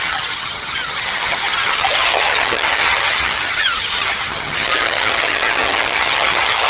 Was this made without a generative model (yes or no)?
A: no